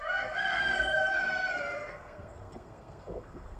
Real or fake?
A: fake